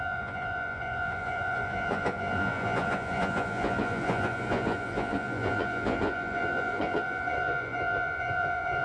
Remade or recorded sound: remade